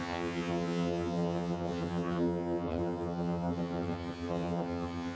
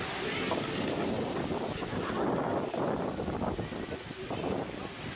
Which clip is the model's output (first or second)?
first